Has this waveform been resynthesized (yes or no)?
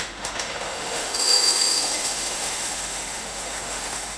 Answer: yes